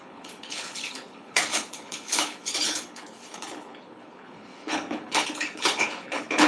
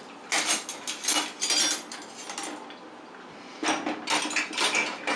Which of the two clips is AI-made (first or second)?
first